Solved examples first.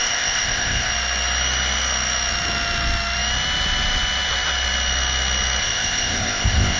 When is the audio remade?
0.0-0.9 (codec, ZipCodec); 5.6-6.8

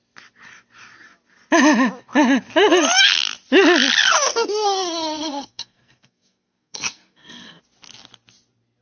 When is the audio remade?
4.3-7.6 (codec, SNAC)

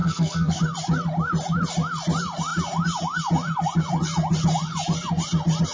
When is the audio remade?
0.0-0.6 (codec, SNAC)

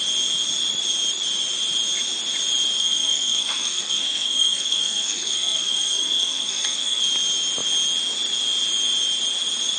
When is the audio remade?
2.8-7.0 (codec, SNAC)

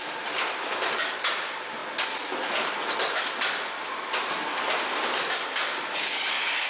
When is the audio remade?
none

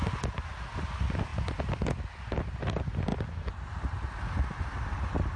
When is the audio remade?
none

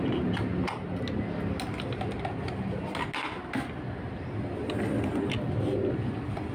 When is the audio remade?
none

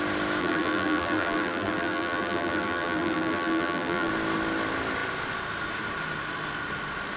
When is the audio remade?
0.4-4.1 (vocoder, BigVGAN v2)